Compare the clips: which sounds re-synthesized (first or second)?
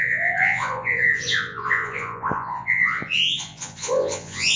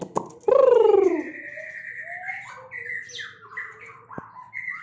first